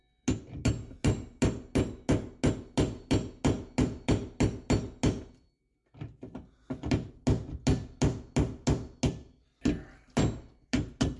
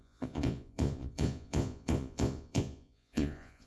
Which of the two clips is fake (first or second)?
second